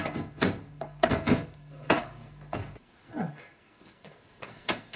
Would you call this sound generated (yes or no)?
yes